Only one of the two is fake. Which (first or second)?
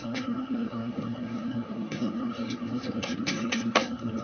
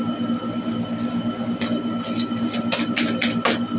first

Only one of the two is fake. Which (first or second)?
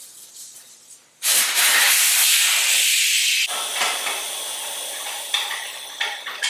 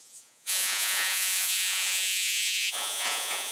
second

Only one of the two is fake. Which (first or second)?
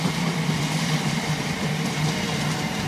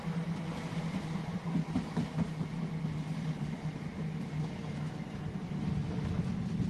first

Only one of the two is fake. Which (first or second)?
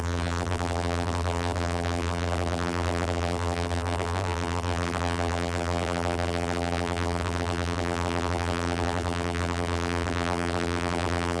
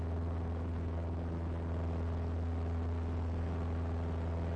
first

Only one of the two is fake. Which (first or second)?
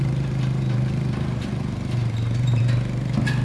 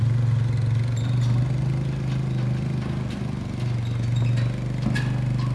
first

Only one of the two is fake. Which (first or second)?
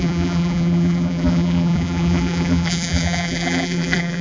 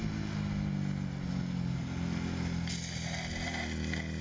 first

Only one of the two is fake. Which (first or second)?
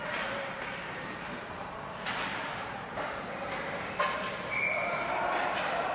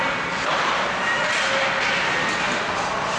first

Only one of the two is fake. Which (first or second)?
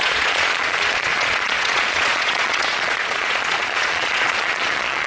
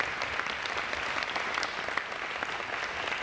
first